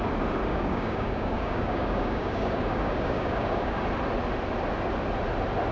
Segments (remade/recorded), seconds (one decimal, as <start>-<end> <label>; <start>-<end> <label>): 0.0-0.4 recorded; 0.4-3.8 remade; 3.8-5.7 recorded